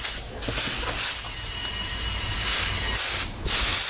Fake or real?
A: real